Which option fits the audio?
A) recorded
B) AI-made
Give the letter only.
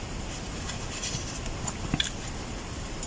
A